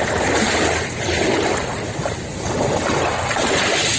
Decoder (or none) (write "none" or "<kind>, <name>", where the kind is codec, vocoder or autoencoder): none